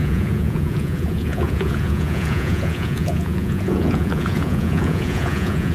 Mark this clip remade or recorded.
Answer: remade